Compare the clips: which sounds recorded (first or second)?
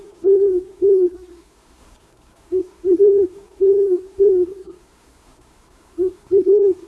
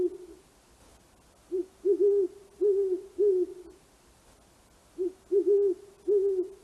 second